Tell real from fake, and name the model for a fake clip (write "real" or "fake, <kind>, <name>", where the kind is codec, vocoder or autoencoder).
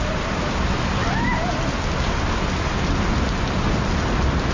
real